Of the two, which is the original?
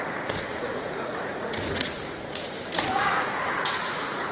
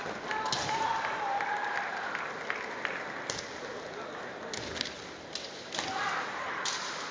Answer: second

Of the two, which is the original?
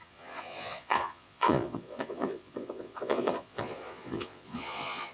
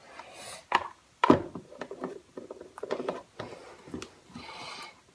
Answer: second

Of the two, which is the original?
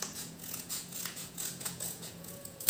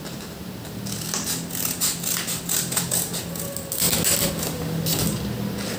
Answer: second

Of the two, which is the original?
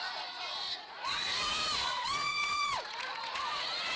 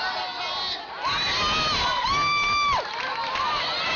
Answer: second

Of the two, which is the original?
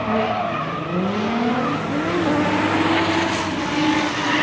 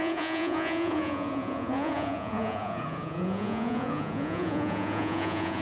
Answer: first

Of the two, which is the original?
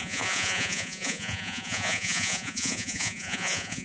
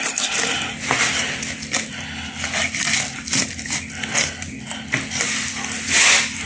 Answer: second